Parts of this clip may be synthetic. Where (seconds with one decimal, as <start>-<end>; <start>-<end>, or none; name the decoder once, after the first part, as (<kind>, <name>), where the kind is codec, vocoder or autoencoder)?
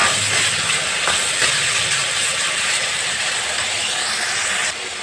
2.0-3.5 (vocoder, BigVGAN v2)